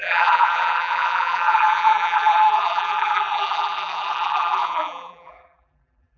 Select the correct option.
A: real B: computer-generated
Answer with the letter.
B